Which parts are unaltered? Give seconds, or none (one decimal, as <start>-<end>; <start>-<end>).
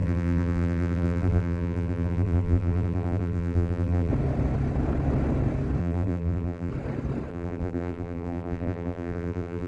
4.1-5.8; 6.7-7.3